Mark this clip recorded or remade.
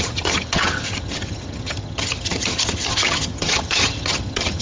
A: remade